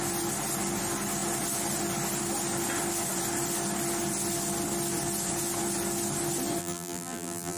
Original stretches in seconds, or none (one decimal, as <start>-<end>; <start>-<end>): 0.0-6.6